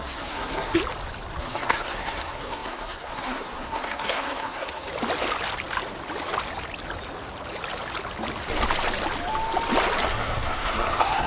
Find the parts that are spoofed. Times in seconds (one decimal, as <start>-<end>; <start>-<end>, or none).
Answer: 0.0-0.8; 1.4-4.9; 10.1-11.3